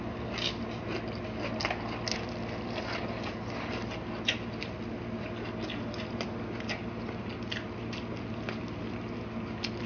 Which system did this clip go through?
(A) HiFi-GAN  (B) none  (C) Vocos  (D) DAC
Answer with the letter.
B